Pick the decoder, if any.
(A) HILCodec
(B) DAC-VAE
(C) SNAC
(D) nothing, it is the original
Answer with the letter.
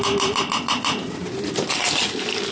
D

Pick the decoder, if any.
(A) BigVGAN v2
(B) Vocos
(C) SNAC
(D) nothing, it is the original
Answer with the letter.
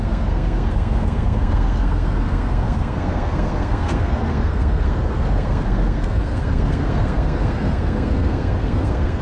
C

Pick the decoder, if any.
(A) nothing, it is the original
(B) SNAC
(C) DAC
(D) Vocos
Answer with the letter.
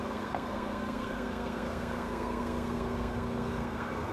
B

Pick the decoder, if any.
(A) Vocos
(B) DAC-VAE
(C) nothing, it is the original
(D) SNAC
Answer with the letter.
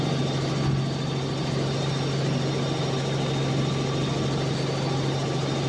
C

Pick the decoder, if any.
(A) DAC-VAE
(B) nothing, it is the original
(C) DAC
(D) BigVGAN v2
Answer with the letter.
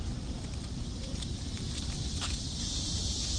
D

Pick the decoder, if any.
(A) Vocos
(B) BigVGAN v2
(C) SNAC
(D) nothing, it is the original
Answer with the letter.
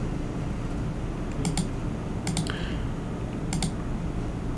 D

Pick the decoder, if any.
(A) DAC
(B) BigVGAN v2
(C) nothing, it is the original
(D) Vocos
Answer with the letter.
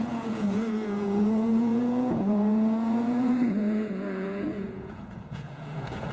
D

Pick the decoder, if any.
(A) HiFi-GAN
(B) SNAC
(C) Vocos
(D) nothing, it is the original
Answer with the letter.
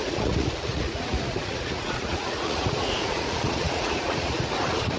C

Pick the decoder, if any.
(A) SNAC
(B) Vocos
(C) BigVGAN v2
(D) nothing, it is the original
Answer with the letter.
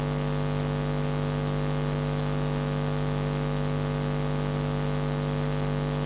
D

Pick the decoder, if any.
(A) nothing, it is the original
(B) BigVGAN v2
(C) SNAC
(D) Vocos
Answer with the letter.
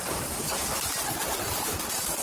B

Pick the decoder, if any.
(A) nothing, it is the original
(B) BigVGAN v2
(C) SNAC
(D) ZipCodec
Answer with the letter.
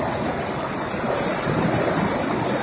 A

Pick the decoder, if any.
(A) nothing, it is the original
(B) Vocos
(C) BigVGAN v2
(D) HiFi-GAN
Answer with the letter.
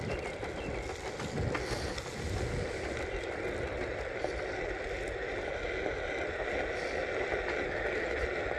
A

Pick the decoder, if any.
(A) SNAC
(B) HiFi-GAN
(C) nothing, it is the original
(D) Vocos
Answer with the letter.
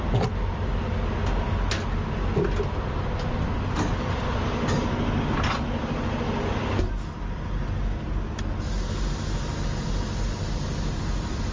C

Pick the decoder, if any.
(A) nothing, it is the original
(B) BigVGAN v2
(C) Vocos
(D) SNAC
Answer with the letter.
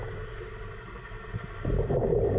A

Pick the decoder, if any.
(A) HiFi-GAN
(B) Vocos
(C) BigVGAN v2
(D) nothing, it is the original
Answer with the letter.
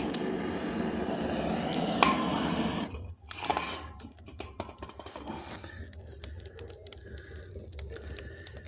D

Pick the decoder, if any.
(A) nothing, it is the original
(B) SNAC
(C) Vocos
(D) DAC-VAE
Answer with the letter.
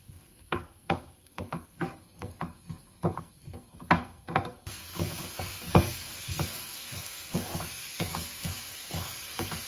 B